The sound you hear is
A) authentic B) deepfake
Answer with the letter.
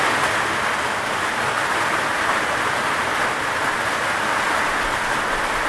A